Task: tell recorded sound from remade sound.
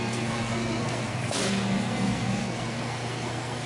remade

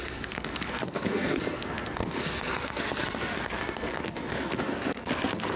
remade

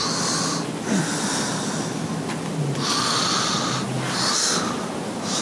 recorded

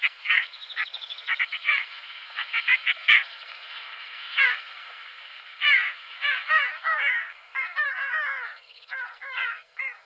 remade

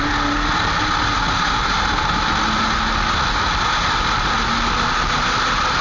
recorded